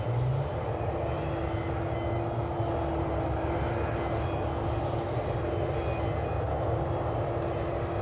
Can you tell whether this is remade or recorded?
recorded